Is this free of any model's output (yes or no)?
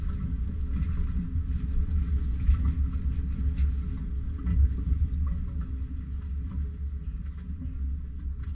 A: yes